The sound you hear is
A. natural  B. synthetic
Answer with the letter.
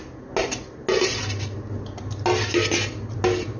A